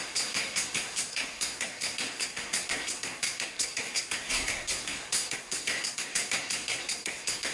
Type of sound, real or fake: fake